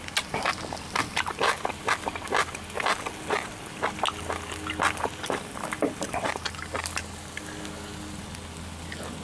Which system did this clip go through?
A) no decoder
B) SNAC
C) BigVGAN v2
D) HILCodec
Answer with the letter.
A